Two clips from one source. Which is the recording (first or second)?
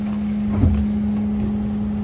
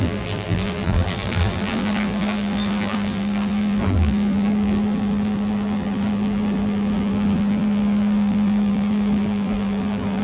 first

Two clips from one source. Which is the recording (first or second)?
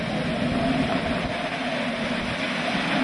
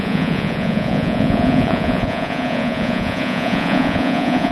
first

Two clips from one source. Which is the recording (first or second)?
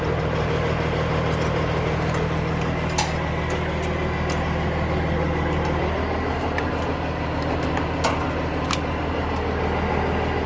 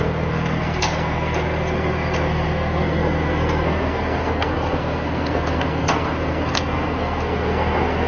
first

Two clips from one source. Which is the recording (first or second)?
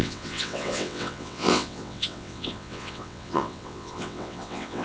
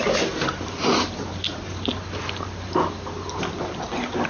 second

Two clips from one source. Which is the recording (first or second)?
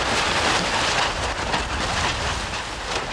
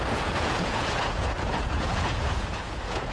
first